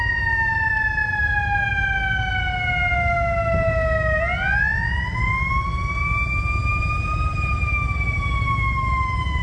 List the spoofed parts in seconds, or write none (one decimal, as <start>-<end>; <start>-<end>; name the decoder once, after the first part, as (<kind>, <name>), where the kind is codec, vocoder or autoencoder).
none